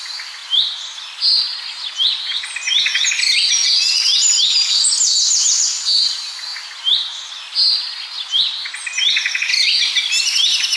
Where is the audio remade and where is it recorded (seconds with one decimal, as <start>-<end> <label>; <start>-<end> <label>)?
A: 0.0-10.8 recorded